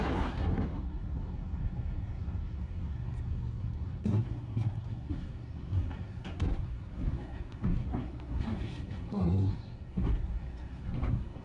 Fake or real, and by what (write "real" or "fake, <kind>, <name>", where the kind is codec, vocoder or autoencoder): fake, codec, SNAC